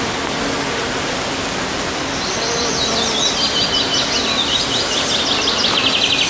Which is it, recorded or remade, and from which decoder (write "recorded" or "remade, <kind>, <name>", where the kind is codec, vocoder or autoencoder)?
recorded